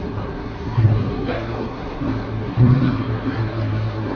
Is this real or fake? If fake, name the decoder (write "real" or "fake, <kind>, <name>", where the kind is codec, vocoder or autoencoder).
fake, codec, SNAC